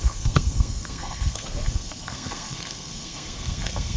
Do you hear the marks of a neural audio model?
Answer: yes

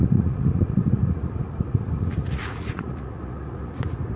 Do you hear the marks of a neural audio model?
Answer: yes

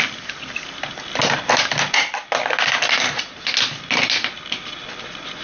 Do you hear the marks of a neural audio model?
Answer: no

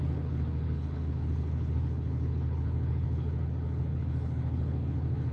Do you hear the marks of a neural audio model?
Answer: yes